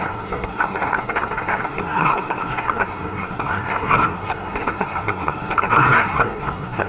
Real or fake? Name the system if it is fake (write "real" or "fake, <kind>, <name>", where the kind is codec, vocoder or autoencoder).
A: fake, codec, SNAC